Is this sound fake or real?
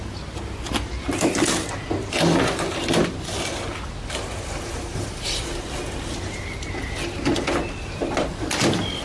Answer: real